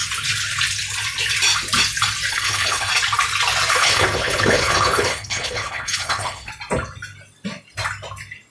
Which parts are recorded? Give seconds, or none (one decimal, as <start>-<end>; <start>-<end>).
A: 0.0-2.3; 2.9-3.7; 6.5-8.5